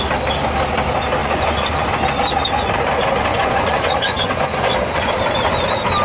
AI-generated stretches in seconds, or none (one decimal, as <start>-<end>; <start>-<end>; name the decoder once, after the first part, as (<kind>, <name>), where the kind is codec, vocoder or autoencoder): 1.2-1.9 (vocoder, Vocos); 3.3-5.1